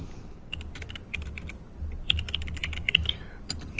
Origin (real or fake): real